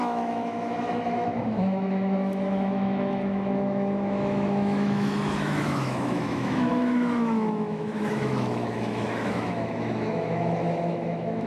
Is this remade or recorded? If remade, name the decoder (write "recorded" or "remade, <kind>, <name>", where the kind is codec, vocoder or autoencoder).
remade, autoencoder, DAC-VAE